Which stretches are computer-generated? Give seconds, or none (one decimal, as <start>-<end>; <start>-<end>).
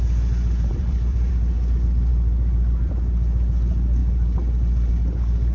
0.7-1.3; 2.1-2.9; 4.0-4.9